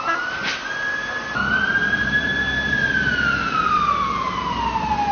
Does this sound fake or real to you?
real